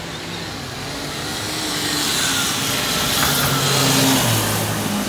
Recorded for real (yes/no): yes